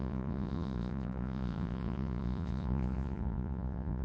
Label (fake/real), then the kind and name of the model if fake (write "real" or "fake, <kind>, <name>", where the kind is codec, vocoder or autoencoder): fake, vocoder, Vocos